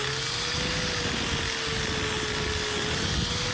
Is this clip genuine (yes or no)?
yes